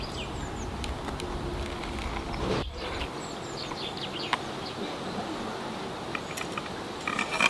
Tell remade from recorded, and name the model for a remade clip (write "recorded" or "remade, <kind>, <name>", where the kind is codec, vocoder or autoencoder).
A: recorded